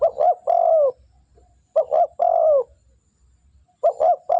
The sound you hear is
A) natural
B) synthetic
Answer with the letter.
A